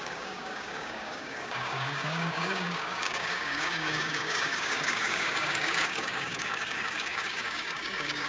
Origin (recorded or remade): remade